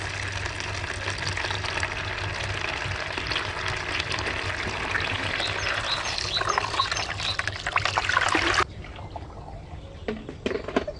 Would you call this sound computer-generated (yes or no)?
no